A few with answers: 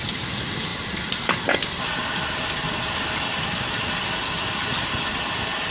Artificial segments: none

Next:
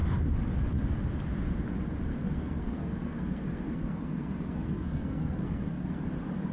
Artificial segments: 2.1-6.0 (codec, SNAC)

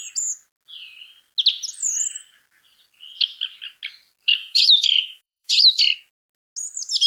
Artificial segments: 4.3-5.8 (autoencoder, DAC-VAE)